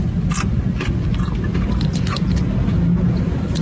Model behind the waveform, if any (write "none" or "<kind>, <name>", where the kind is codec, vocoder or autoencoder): none